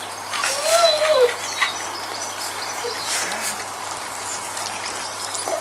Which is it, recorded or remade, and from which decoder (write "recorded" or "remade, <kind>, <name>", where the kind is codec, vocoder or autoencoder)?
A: recorded